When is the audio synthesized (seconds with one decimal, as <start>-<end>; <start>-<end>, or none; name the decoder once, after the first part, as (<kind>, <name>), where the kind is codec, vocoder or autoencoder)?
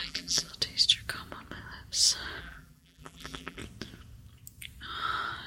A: 0.0-0.5 (vocoder, BigVGAN v2); 2.4-3.6